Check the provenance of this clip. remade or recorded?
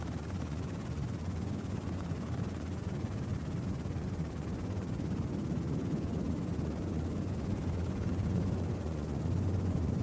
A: remade